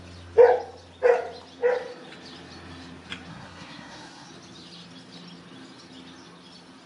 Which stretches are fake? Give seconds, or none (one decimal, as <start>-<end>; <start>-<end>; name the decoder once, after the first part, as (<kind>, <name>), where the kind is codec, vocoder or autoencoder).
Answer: 3.3-4.3 (codec, SNAC)